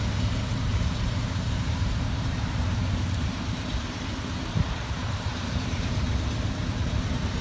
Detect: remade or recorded remade